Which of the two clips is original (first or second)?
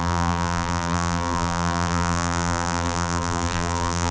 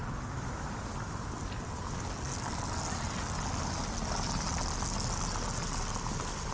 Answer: second